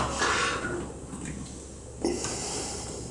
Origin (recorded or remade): recorded